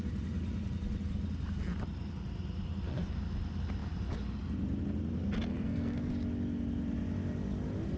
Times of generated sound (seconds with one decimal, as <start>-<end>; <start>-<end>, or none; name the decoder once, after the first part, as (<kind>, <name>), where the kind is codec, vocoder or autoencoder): 5.5-6.1 (codec, SNAC)